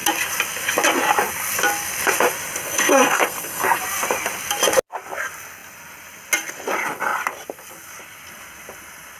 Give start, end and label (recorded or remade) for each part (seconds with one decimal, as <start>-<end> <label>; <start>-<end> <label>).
0.0-2.6 recorded; 2.6-3.8 remade; 3.8-9.2 recorded